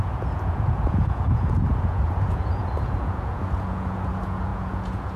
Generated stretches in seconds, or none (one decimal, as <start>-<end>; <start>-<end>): 0.0-5.2